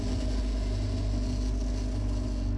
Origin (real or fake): real